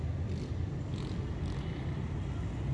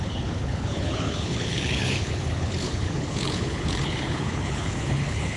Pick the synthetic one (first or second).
second